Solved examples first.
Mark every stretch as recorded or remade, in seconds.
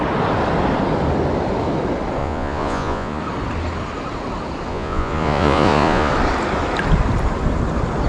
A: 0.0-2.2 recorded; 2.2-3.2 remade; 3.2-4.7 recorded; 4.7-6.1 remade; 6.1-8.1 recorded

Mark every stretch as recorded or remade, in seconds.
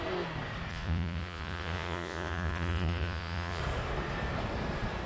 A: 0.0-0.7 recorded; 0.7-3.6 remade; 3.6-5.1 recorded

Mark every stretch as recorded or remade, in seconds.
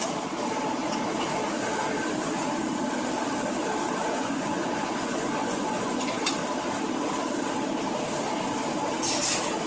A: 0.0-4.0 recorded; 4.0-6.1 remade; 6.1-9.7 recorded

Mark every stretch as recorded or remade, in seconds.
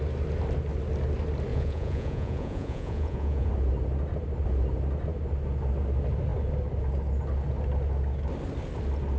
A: 0.0-1.5 recorded; 1.5-3.5 remade; 3.5-9.2 recorded